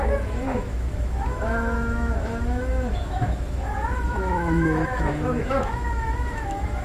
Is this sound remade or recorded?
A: remade